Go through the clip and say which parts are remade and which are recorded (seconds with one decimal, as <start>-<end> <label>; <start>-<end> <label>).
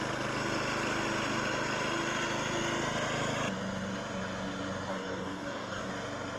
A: 0.0-4.9 recorded; 4.9-5.9 remade; 5.9-6.4 recorded